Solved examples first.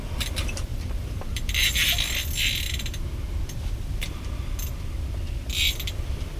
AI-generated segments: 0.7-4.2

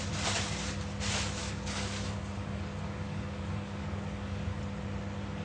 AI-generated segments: 1.4-4.6

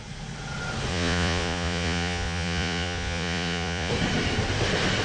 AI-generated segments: 0.9-3.9

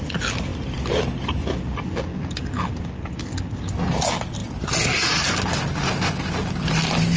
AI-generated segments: none

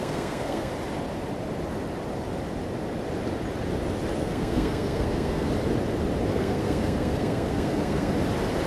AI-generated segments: 0.0-0.7; 4.2-5.5; 6.3-8.1

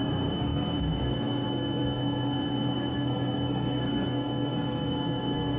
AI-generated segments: 0.0-5.6